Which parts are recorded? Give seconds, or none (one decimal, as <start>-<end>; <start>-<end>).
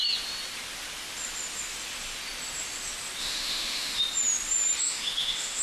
0.0-3.2; 4.0-4.8